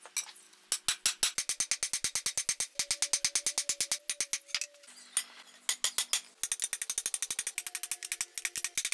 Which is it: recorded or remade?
recorded